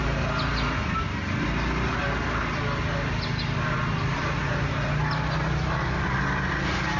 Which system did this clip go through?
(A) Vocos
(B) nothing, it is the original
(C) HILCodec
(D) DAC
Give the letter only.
B